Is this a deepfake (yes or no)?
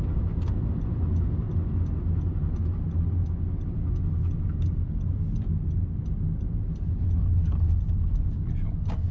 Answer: no